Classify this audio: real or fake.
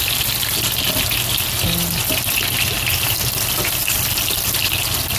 real